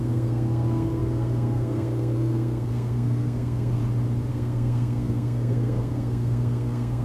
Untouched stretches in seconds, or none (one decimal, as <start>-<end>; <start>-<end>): 3.8-4.3